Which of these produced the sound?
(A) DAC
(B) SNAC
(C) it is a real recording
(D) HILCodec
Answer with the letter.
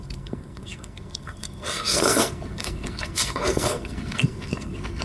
B